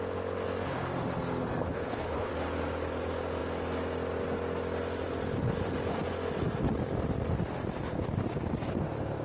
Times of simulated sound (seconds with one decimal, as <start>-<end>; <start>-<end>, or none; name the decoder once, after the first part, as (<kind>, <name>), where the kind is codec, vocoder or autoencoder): 1.6-2.3 (codec, HILCodec)